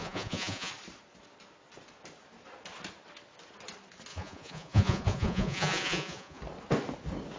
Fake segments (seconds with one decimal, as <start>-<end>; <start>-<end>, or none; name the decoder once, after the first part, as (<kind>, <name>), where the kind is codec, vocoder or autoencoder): 0.0-0.7 (vocoder, Vocos); 4.1-6.4

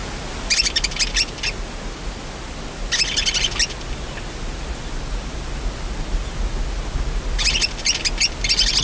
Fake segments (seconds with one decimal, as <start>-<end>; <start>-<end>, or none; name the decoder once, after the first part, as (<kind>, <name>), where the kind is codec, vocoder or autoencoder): none

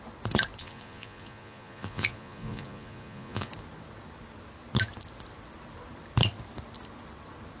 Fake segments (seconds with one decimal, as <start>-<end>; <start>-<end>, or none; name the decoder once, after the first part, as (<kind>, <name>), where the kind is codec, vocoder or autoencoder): 0.6-3.5 (vocoder, Vocos)

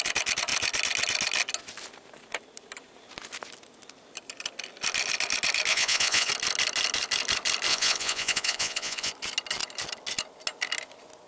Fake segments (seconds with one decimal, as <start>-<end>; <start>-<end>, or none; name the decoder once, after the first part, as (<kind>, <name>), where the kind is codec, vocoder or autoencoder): 5.7-6.3 (vocoder, Vocos); 7.7-9.1

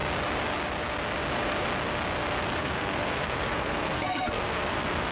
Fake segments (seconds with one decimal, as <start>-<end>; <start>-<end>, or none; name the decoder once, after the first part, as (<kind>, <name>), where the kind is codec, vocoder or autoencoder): 2.6-5.1 (codec, SNAC)

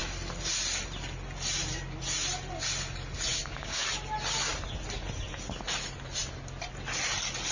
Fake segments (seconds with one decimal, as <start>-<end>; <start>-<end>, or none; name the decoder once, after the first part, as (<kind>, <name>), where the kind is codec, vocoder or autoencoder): 3.3-3.9 (codec, DAC)

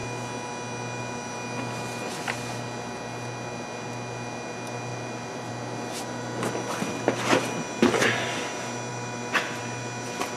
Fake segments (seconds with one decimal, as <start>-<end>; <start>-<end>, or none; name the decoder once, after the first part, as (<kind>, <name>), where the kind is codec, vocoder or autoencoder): 4.9-5.5 (vocoder, BigVGAN v2); 8.9-9.6